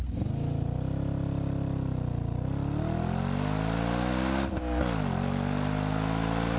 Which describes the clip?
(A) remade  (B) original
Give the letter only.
B